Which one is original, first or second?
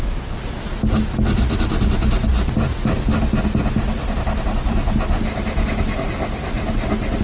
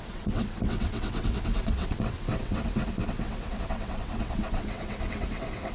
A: first